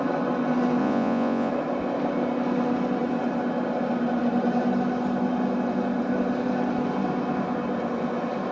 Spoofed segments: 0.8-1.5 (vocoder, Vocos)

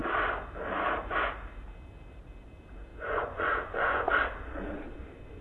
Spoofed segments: 2.9-4.1 (vocoder, Vocos)

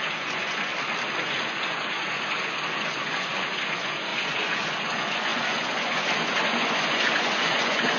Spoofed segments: 0.0-0.7 (vocoder, Vocos); 1.2-8.0

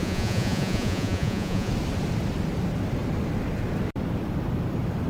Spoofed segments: 0.0-1.7 (vocoder, Vocos)

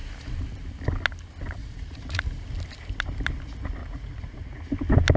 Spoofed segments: 1.6-2.2 (vocoder, Vocos); 3.8-4.6

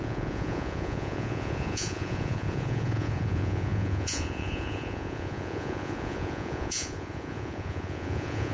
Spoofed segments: 0.0-8.5 (vocoder, Vocos)

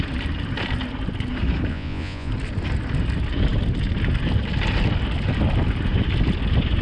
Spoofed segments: 1.7-2.3 (vocoder, Vocos)